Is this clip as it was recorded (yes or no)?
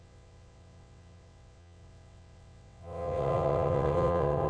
no